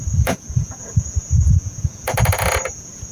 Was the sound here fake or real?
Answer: fake